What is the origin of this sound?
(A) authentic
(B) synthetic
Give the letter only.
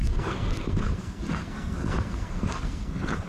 B